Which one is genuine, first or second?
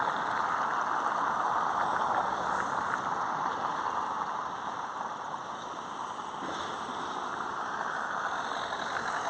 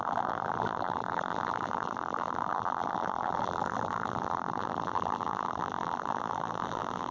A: first